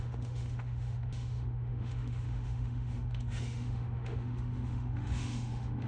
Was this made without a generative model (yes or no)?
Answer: no